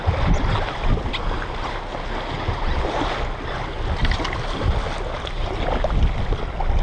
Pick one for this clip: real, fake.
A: real